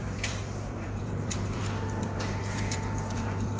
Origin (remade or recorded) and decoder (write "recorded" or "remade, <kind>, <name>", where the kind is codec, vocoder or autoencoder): remade, vocoder, BigVGAN v2